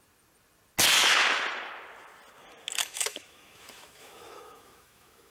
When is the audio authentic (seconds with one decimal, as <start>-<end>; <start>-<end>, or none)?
0.0-2.8